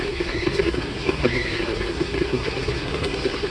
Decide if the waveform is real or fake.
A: fake